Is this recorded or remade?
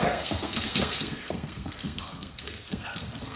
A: remade